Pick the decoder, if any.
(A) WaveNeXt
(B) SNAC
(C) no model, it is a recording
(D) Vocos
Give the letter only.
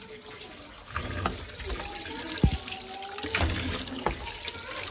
C